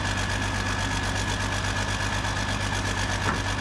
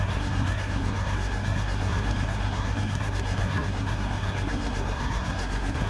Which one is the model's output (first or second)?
second